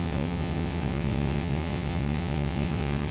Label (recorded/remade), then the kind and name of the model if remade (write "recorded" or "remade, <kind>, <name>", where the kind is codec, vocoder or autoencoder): remade, vocoder, WaveNeXt